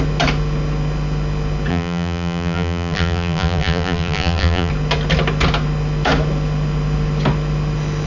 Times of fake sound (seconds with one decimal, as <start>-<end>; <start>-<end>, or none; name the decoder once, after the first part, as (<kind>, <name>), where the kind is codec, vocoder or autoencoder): 1.7-4.7 (vocoder, BigVGAN v2)